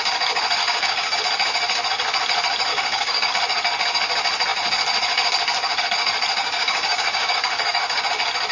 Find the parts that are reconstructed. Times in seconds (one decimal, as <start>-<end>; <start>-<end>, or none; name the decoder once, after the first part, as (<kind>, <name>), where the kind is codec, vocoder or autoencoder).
0.6-1.2 (codec, DAC); 2.7-3.3; 6.4-8.0